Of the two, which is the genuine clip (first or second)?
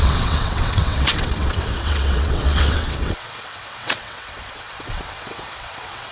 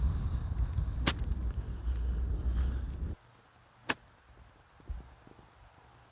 second